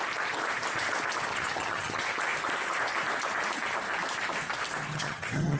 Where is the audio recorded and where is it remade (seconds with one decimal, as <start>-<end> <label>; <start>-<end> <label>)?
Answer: 0.0-1.3 recorded; 1.3-2.0 remade; 2.0-4.9 recorded; 4.9-5.6 remade